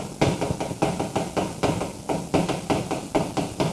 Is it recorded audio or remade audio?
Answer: recorded